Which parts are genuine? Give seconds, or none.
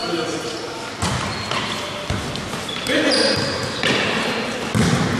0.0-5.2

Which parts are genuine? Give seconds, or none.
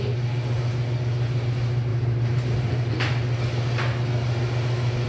0.0-1.9; 2.9-5.1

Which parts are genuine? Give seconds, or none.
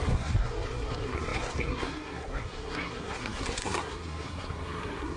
none